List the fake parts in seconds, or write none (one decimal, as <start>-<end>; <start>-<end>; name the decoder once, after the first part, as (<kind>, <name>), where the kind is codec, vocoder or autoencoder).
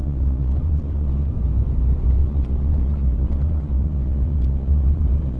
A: 0.0-1.3 (vocoder, Vocos); 2.2-5.4